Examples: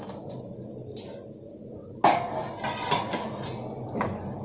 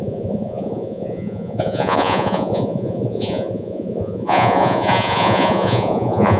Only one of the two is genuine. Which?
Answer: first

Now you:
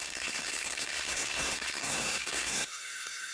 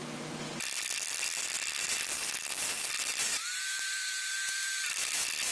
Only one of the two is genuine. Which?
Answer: second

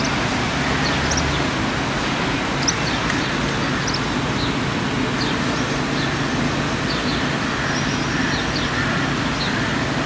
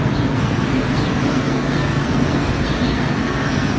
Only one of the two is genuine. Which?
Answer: first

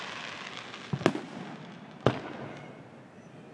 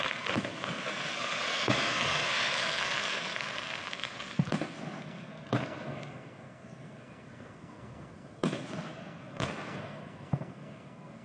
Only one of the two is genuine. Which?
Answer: first